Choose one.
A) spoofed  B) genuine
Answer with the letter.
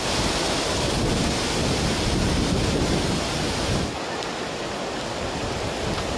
B